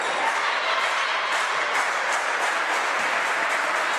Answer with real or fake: fake